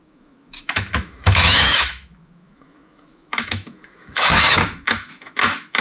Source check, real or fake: fake